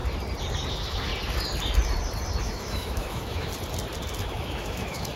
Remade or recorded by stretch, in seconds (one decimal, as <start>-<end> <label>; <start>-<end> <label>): 0.0-0.7 recorded; 0.7-1.1 remade; 1.1-2.4 recorded; 2.4-3.5 remade; 3.5-4.2 recorded; 4.2-5.2 remade